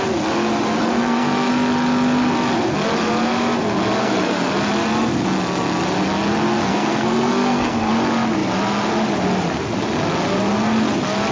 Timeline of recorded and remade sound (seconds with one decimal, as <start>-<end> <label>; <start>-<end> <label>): 0.0-0.8 recorded; 0.8-1.5 remade; 1.5-4.0 recorded; 4.0-4.5 remade; 4.5-6.6 recorded; 6.6-7.9 remade; 7.9-11.3 recorded